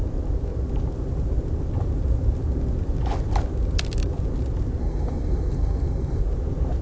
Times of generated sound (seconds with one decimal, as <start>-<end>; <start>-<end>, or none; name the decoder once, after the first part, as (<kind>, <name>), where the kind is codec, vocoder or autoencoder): 4.8-6.2 (codec, SNAC)